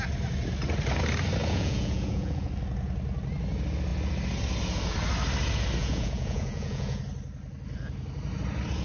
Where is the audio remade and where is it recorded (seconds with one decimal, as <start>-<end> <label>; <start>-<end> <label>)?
0.0-1.4 recorded; 1.4-2.5 remade; 2.5-5.8 recorded; 5.8-7.0 remade; 7.0-8.8 recorded